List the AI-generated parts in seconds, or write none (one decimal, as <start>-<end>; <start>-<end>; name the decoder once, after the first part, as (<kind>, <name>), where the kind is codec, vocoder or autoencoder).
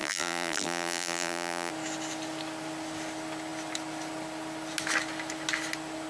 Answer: 0.0-1.7 (vocoder, BigVGAN v2)